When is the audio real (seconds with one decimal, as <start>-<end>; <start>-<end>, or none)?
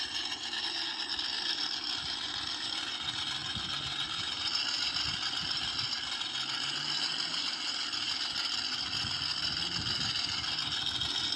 0.0-11.4